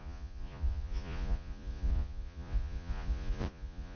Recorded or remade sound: remade